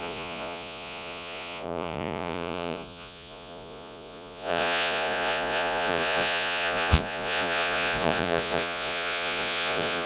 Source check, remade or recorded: remade